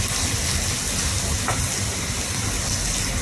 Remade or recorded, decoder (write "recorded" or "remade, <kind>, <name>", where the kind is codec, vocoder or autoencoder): recorded